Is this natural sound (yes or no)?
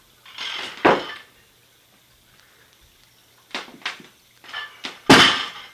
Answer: yes